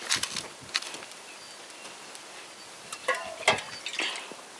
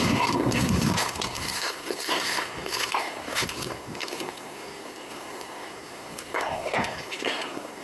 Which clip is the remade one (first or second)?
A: second